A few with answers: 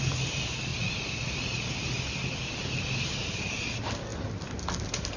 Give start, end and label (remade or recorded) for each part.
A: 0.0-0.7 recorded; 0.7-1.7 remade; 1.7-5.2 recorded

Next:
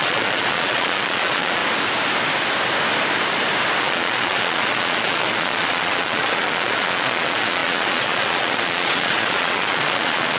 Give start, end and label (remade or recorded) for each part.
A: 0.0-1.6 remade; 1.6-3.8 recorded; 3.8-10.4 remade

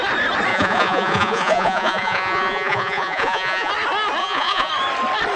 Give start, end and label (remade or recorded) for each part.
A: 0.0-0.5 recorded; 0.5-3.7 remade; 3.7-4.2 recorded; 4.2-4.7 remade; 4.7-5.4 recorded

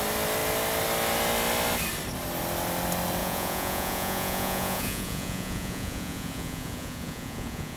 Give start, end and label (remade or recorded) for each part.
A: 0.0-3.2 recorded; 3.2-7.8 remade

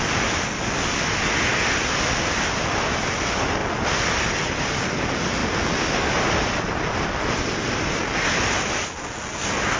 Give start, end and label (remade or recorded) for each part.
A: 0.0-9.8 recorded